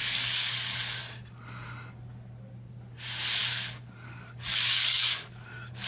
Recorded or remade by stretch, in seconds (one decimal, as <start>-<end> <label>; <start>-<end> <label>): 0.0-1.0 remade; 1.0-3.4 recorded; 3.4-5.9 remade